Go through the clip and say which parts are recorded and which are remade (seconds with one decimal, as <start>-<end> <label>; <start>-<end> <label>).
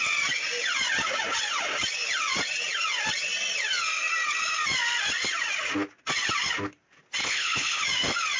0.0-7.2 recorded; 7.2-7.8 remade; 7.8-8.4 recorded